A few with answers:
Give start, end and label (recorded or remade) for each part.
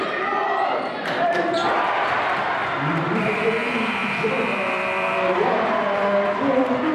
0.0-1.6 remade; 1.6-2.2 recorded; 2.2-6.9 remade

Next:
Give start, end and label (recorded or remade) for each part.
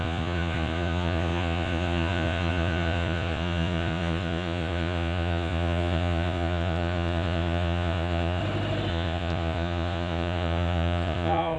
0.0-8.4 remade; 8.4-8.9 recorded; 8.9-11.6 remade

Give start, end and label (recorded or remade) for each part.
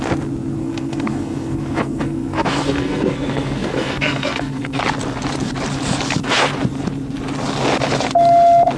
0.0-0.6 recorded; 0.6-4.8 remade; 4.8-8.8 recorded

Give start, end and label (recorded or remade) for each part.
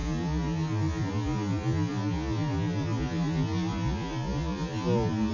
0.0-5.3 recorded